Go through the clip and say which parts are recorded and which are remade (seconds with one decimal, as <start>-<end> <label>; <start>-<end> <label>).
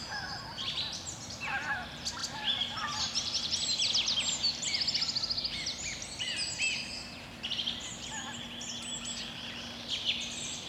0.0-10.7 recorded